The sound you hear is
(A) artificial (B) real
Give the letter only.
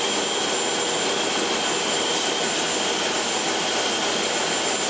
B